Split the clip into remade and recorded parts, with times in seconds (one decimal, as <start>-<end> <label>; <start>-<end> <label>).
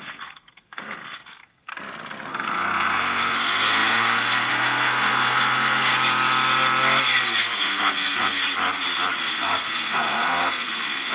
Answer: 0.0-1.7 remade; 1.7-2.3 recorded; 2.3-5.9 remade; 5.9-7.4 recorded; 7.4-8.4 remade; 8.4-9.3 recorded; 9.3-11.1 remade